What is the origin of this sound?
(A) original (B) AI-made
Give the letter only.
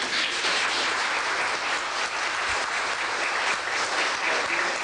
A